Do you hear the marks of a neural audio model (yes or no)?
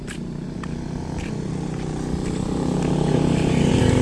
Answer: no